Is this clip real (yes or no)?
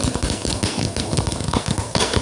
no